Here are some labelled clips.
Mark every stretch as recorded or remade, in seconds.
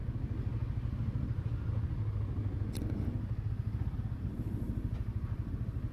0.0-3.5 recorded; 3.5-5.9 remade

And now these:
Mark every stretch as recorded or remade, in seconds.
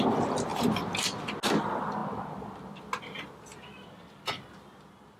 0.0-5.2 recorded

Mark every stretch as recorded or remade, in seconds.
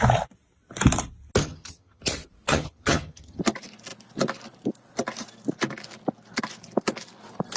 0.0-1.4 recorded; 1.4-2.0 remade; 2.0-2.5 recorded; 2.5-3.4 remade; 3.4-7.6 recorded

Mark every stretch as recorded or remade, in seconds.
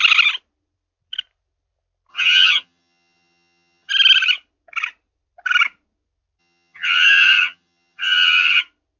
0.0-2.1 recorded; 2.1-3.9 remade; 3.9-6.4 recorded; 6.4-8.6 remade; 8.6-9.0 recorded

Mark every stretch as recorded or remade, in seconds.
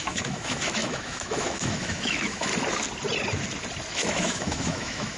0.0-2.5 remade; 2.5-3.9 recorded; 3.9-5.2 remade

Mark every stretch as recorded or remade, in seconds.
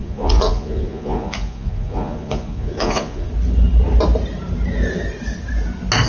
0.0-3.3 remade; 3.3-6.1 recorded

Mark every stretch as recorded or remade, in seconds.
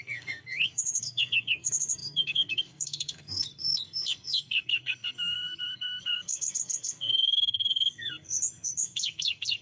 0.0-9.6 remade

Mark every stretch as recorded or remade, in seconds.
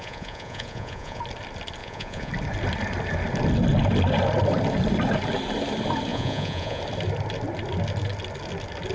0.0-1.2 remade; 1.2-1.8 recorded; 1.8-2.3 remade; 2.3-6.1 recorded; 6.1-6.8 remade; 6.8-8.9 recorded